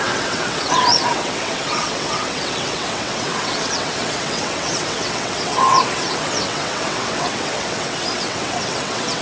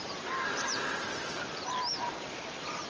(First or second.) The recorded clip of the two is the second